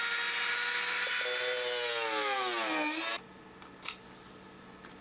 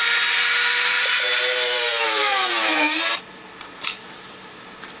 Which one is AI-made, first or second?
second